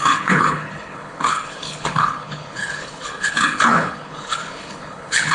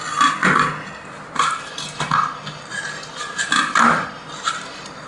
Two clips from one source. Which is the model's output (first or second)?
first